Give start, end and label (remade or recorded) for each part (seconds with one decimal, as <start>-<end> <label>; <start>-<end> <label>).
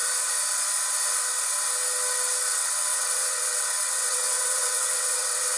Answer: 0.0-2.5 recorded; 2.5-5.6 remade